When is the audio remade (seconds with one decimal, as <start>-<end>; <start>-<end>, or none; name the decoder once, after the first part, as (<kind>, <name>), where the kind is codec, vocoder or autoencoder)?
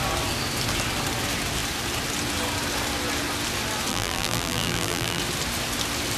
3.9-5.2 (vocoder, BigVGAN v2)